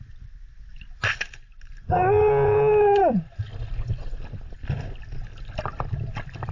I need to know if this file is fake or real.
real